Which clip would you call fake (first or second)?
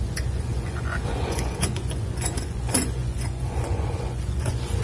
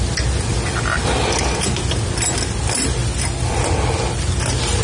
first